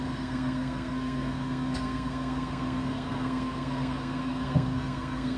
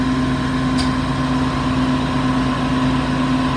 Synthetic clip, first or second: first